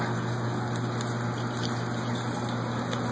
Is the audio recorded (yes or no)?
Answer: yes